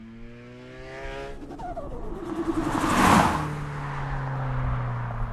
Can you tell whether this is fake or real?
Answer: real